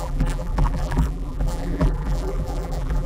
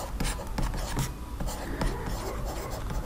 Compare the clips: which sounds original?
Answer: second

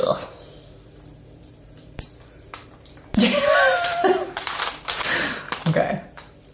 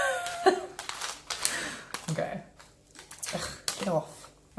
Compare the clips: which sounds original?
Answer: second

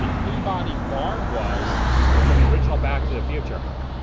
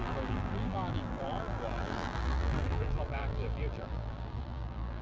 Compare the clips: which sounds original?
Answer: first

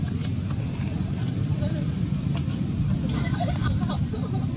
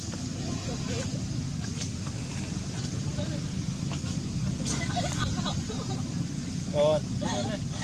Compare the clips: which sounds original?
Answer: second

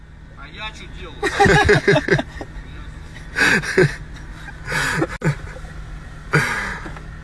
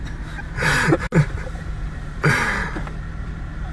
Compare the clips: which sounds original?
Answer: first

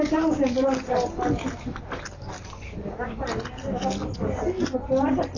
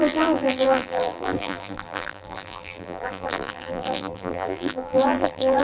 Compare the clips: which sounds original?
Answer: first